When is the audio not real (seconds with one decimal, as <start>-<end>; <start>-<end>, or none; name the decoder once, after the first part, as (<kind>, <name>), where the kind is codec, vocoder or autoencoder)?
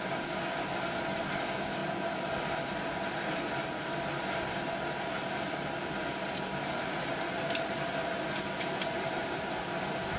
none